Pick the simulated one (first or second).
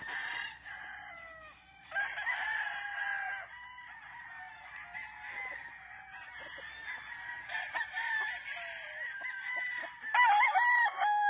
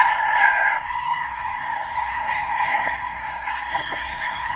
second